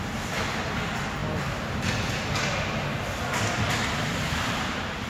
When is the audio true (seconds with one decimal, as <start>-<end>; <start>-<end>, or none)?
0.0-5.1